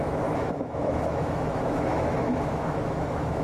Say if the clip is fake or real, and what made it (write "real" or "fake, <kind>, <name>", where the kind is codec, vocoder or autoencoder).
fake, autoencoder, DAC-VAE